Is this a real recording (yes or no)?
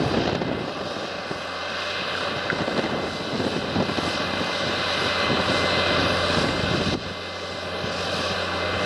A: yes